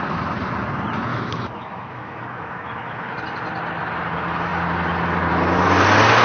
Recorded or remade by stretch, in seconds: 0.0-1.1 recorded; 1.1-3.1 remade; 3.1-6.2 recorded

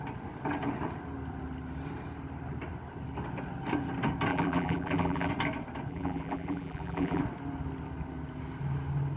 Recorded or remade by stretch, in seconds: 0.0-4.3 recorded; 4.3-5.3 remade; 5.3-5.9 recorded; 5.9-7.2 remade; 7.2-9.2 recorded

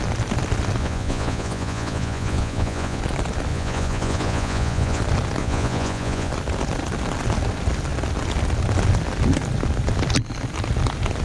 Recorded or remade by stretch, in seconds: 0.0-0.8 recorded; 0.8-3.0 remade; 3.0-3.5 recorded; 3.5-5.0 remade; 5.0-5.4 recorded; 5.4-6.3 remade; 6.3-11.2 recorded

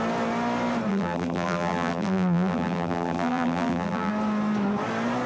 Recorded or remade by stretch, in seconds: 0.0-0.9 recorded; 0.9-4.1 remade; 4.1-5.3 recorded